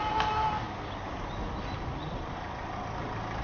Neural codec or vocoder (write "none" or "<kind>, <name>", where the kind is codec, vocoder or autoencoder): none